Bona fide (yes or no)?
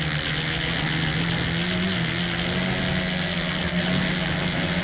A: yes